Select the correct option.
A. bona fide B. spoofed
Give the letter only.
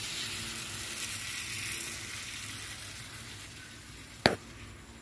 A